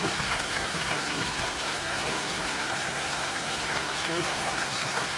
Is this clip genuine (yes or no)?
no